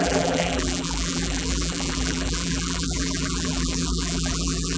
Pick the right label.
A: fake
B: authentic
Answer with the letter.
A